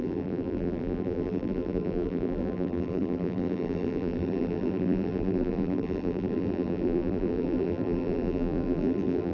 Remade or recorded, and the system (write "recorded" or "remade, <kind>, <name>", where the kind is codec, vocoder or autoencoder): remade, vocoder, BigVGAN v2